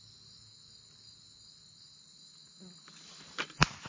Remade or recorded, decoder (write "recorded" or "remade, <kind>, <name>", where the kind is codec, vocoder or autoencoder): recorded